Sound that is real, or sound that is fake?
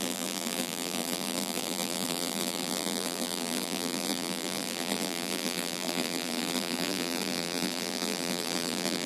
fake